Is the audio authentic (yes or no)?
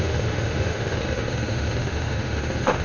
no